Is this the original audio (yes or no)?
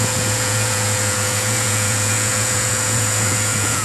no